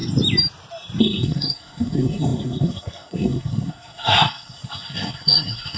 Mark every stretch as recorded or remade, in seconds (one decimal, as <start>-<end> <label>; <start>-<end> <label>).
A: 0.0-1.0 recorded; 1.0-5.8 remade